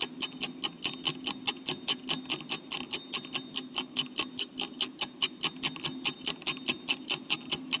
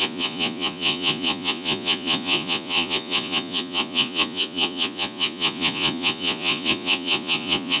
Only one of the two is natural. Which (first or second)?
first